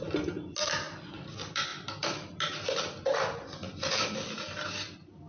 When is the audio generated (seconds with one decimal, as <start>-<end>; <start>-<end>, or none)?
none